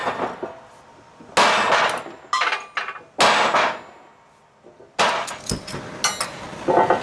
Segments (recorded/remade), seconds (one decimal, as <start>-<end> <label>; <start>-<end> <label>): 0.0-7.0 recorded